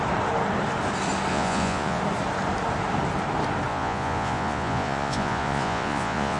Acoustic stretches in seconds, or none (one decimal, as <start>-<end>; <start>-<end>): 0.0-1.3; 2.0-3.7